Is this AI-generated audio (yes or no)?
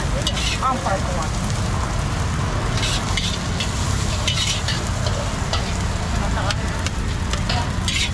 no